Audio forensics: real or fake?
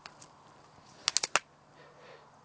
real